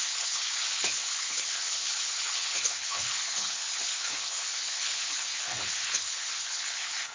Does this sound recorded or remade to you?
remade